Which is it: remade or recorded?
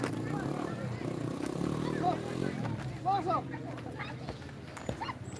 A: recorded